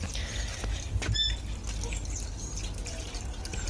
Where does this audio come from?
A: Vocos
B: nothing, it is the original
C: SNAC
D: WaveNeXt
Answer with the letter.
B